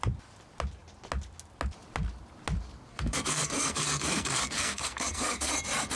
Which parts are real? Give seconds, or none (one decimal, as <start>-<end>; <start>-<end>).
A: 0.0-2.9; 5.5-6.0